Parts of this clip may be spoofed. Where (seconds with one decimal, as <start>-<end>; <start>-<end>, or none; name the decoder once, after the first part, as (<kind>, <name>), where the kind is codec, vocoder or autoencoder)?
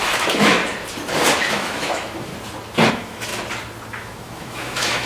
0.0-0.6 (autoencoder, DAC-VAE); 1.5-2.3; 2.9-3.3; 3.9-5.0